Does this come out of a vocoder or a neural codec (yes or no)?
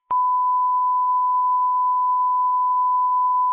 yes